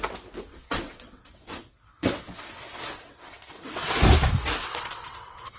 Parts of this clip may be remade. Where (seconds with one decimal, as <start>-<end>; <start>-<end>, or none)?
0.5-3.9; 4.6-5.6